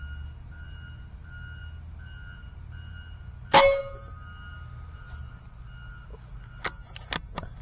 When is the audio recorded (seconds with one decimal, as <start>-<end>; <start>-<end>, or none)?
0.0-7.6